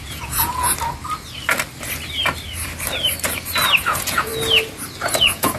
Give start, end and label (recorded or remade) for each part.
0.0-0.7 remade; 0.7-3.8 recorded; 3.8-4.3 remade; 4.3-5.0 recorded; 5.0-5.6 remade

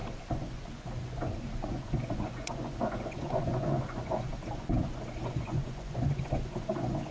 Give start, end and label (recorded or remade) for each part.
0.0-7.1 remade

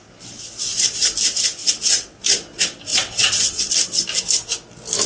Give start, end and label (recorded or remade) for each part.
0.0-1.6 recorded; 1.6-2.2 remade; 2.2-2.9 recorded; 2.9-3.7 remade; 3.7-5.1 recorded

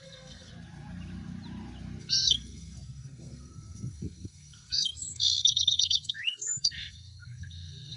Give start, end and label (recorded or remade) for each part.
0.0-0.5 remade; 0.5-2.0 recorded; 2.0-8.0 remade